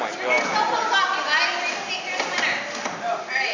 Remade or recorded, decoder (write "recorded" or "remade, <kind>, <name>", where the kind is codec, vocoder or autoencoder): recorded